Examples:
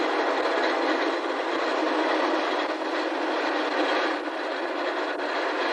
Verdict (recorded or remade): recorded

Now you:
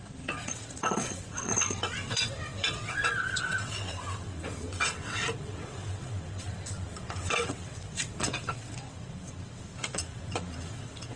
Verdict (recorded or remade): remade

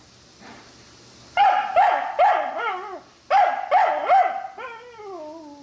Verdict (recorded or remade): recorded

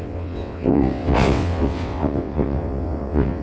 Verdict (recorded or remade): remade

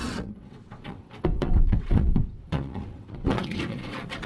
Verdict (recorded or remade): remade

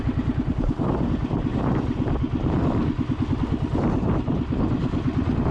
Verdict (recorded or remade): recorded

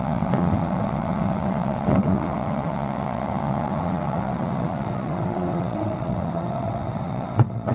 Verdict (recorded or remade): remade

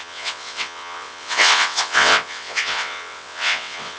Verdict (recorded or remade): remade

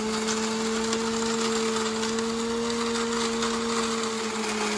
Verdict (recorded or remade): recorded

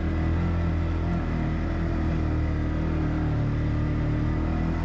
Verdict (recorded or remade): recorded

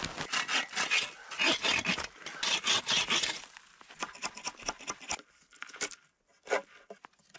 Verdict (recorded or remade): recorded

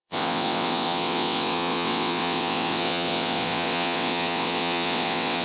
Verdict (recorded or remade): remade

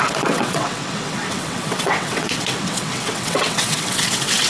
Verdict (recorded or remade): remade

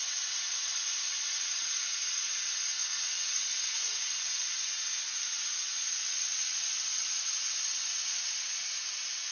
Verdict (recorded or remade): remade